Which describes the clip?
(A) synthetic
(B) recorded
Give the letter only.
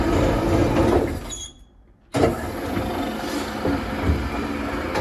B